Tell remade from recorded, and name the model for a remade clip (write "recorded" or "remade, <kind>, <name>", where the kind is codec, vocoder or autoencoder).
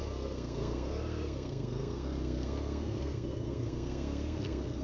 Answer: remade, codec, SNAC